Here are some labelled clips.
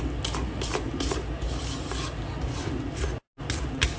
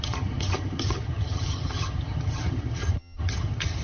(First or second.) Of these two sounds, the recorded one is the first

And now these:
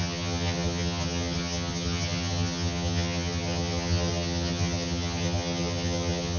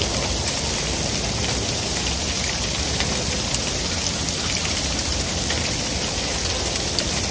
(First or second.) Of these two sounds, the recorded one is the second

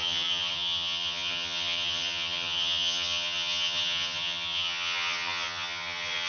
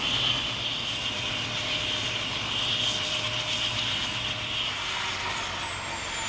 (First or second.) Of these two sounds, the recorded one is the second